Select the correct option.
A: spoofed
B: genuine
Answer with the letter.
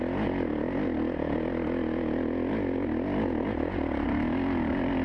B